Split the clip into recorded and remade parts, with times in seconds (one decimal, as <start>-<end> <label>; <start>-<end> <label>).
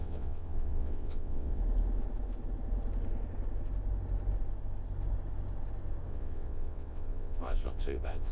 0.0-1.6 remade; 1.6-6.1 recorded; 6.1-8.3 remade